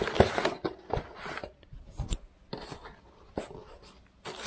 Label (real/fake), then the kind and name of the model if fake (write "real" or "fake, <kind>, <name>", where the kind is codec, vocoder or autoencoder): real